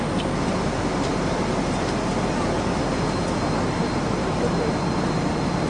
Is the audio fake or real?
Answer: real